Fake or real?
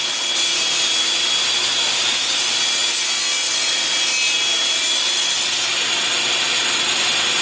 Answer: real